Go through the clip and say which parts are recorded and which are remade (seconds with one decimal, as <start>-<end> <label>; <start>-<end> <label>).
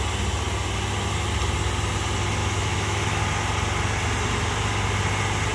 0.0-2.4 recorded; 2.4-3.2 remade; 3.2-5.5 recorded